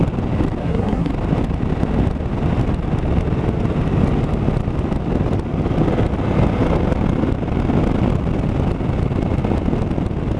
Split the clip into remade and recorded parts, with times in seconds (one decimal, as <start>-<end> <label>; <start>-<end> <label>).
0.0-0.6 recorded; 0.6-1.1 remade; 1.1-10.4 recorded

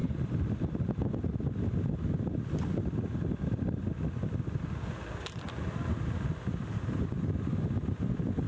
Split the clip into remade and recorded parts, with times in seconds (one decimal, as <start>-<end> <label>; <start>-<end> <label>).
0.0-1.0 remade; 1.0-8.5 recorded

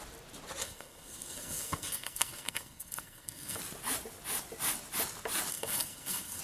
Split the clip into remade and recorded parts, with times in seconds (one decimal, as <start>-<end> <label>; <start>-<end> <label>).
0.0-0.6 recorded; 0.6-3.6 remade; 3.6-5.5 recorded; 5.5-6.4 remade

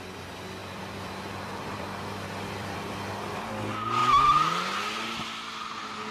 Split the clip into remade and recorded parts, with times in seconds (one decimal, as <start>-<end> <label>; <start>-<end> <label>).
0.0-0.6 recorded; 0.6-3.5 remade; 3.5-6.1 recorded